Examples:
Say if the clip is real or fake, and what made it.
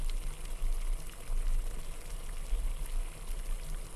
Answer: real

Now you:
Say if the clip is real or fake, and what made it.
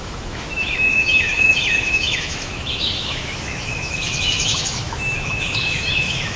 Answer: fake, autoencoder, DAC-VAE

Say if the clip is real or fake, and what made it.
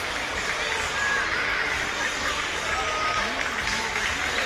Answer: real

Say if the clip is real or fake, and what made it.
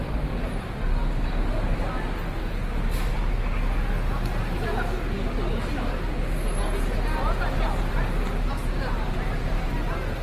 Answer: real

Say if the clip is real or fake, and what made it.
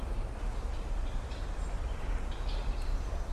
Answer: real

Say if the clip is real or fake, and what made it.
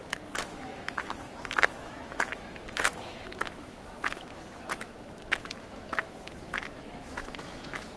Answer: fake, autoencoder, DAC-VAE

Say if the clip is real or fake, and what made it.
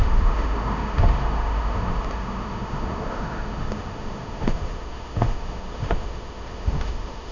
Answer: fake, autoencoder, DAC-VAE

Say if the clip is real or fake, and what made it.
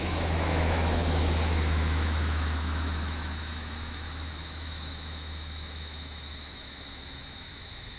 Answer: fake, autoencoder, DAC-VAE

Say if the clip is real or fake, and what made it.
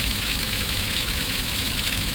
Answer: fake, autoencoder, DAC-VAE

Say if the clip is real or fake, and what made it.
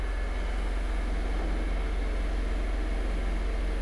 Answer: real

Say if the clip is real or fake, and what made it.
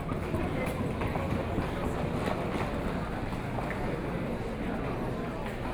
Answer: real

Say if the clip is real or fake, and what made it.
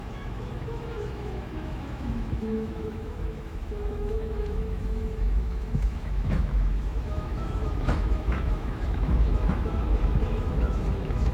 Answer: fake, autoencoder, DAC-VAE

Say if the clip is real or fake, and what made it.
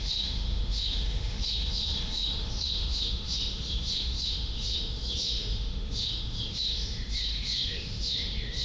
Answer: fake, autoencoder, DAC-VAE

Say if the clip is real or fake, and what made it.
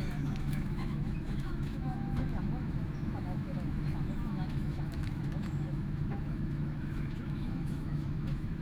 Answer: fake, autoencoder, DAC-VAE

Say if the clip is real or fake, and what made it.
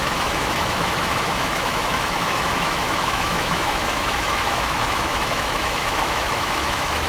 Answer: fake, autoencoder, DAC-VAE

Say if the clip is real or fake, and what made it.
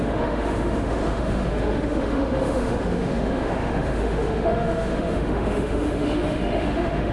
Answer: fake, autoencoder, DAC-VAE